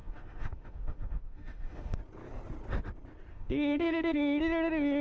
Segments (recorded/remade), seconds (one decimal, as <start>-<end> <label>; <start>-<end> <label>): 0.0-2.0 remade; 2.0-3.3 recorded; 3.3-4.4 remade; 4.4-5.0 recorded